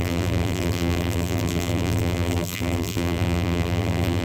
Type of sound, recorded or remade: remade